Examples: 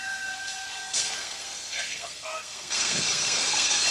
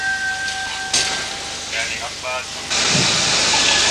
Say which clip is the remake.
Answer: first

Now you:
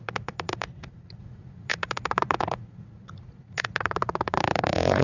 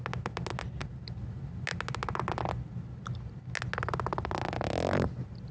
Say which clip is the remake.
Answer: first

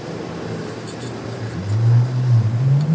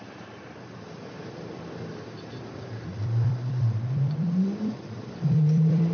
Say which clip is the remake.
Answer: second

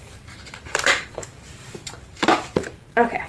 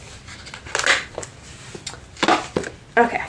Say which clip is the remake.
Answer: first